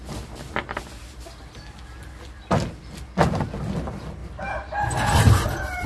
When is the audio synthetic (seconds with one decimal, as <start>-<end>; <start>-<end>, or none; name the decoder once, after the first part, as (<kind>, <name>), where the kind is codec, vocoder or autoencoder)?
none